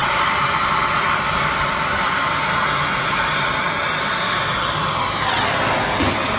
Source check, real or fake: fake